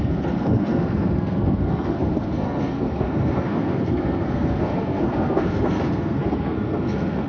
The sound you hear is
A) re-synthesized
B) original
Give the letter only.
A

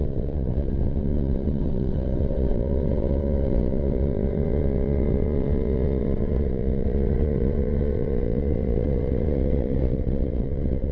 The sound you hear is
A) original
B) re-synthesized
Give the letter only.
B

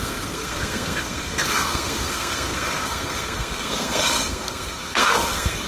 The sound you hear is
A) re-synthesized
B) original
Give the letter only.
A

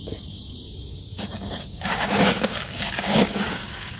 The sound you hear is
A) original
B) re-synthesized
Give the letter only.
B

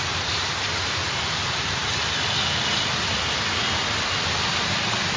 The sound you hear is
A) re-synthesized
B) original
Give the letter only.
B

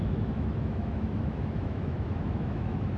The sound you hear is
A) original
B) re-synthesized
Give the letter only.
B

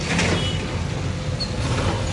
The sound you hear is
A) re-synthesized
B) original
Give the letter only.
B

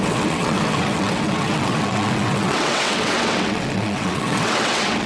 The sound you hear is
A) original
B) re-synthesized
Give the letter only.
B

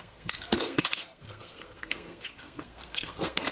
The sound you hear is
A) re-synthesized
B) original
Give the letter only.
A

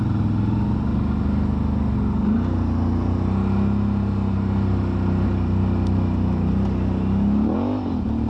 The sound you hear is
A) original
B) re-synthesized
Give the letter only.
A